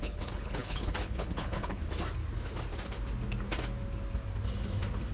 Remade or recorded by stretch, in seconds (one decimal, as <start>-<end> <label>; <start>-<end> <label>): 0.0-1.8 remade; 1.8-5.1 recorded